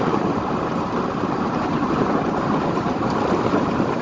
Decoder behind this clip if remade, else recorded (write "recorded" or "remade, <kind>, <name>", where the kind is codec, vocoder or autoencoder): remade, vocoder, BigVGAN v2